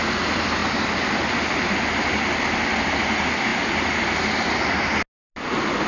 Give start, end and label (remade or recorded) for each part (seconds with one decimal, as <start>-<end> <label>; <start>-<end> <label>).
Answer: 0.0-5.9 recorded

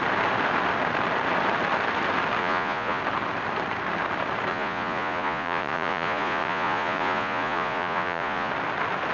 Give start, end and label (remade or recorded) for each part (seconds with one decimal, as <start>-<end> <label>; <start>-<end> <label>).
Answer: 0.0-2.4 recorded; 2.4-3.0 remade; 3.0-4.5 recorded; 4.5-8.5 remade; 8.5-9.1 recorded

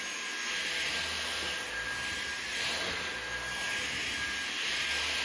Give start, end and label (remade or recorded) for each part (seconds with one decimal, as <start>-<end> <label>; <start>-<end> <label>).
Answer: 0.0-5.2 recorded